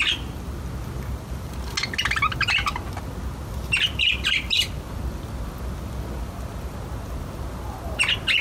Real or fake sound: real